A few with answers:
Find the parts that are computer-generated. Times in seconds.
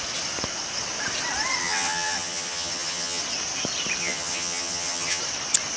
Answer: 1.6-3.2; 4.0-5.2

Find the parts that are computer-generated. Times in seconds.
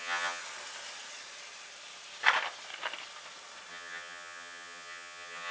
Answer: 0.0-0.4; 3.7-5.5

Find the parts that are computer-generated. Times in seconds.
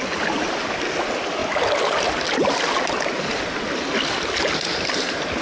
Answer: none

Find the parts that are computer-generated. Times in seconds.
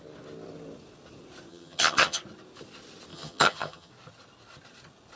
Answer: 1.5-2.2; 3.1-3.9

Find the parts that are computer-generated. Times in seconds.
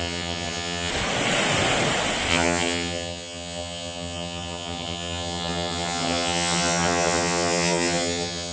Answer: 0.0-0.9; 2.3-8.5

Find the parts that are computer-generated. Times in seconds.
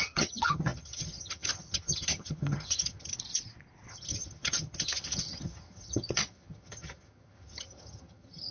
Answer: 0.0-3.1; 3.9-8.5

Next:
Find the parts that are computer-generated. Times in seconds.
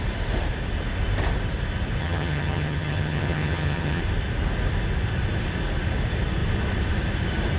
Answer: 2.0-4.0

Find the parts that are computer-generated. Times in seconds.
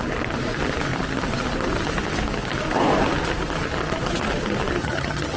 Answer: 4.8-5.4